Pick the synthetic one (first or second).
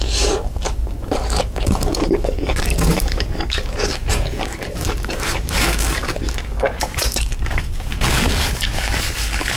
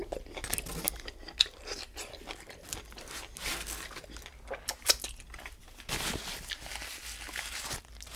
first